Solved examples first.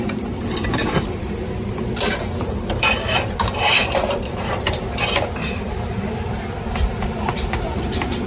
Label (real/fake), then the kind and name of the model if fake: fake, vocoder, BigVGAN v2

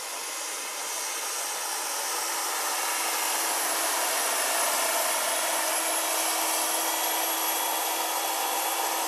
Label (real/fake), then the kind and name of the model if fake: real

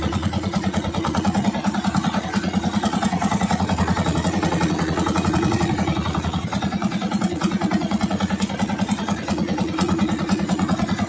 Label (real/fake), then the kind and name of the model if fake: fake, vocoder, Vocos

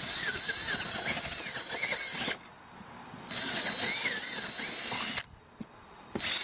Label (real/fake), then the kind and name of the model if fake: real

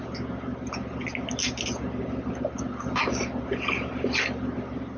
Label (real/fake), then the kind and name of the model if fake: real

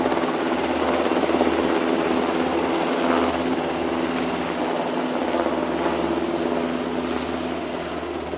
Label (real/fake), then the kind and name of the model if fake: real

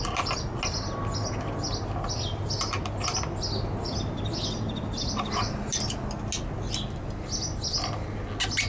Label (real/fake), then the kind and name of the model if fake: real